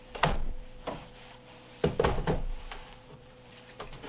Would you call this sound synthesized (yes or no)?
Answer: yes